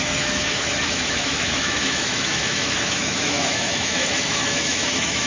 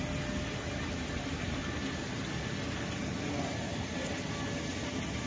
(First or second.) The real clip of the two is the second